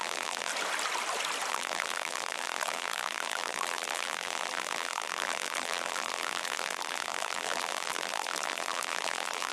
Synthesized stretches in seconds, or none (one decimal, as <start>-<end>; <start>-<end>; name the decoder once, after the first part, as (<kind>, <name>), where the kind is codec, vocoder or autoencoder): 0.0-0.5 (vocoder, BigVGAN v2); 1.5-9.5